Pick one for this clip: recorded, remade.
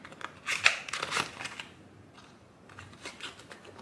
recorded